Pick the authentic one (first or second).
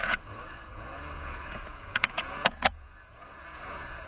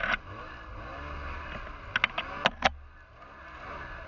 second